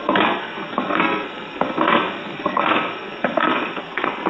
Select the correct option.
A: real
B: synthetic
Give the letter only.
B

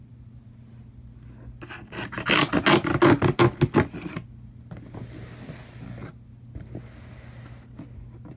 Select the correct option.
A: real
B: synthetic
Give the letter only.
A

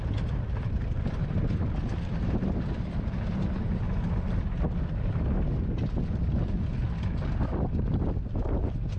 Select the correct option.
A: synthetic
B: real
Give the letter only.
B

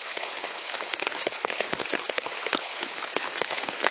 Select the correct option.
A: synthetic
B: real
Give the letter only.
A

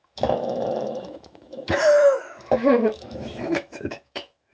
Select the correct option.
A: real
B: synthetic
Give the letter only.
B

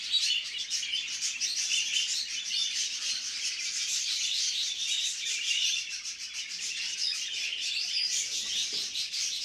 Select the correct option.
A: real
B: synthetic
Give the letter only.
B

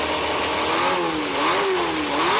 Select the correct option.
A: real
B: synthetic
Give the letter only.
A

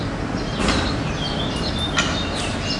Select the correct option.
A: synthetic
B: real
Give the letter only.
B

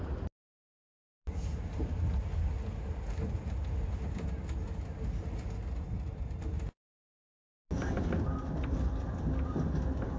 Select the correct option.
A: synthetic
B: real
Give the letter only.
B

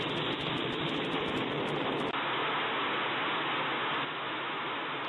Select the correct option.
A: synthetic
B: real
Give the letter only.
B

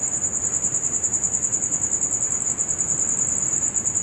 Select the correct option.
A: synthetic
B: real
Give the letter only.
B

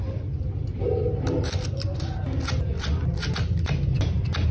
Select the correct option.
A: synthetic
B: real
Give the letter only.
B